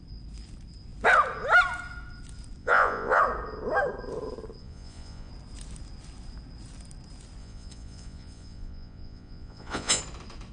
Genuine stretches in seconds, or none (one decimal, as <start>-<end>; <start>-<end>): 0.0-2.6; 3.2-4.6; 5.3-7.4; 10.0-10.5